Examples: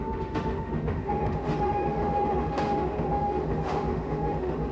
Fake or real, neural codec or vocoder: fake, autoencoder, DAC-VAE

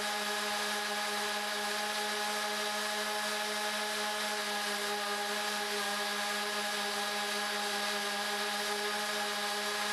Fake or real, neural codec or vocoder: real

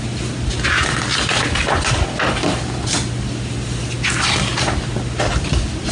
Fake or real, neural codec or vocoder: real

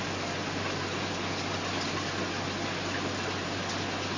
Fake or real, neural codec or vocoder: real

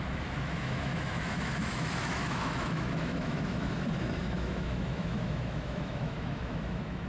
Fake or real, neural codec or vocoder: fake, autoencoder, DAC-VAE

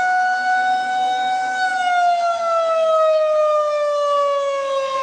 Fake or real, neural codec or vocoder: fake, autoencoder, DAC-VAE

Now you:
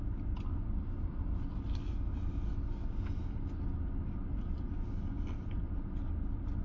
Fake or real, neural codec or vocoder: real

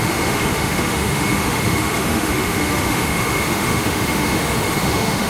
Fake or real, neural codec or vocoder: fake, autoencoder, DAC-VAE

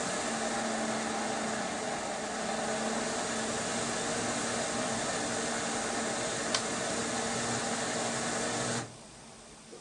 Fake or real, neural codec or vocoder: real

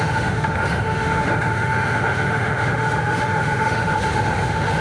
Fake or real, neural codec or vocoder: fake, autoencoder, DAC-VAE